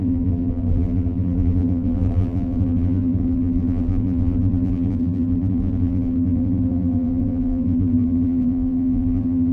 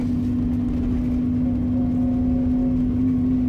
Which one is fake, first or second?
first